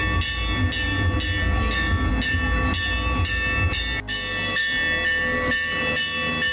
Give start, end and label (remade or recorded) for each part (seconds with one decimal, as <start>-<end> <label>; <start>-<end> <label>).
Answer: 0.0-6.5 recorded